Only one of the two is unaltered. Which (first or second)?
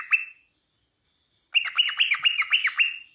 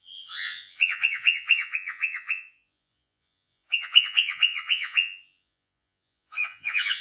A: first